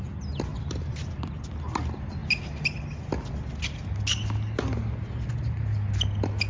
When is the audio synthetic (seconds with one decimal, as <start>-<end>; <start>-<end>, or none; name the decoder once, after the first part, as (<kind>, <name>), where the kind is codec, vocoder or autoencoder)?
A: 0.5-1.3 (vocoder, BigVGAN v2)